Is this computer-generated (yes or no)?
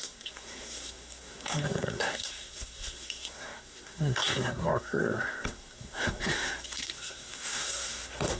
yes